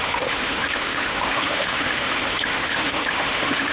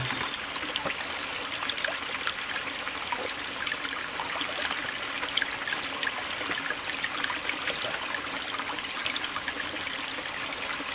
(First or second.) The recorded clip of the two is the second